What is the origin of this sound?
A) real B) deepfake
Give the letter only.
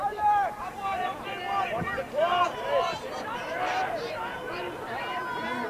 B